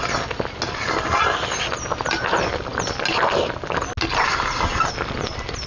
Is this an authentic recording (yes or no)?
yes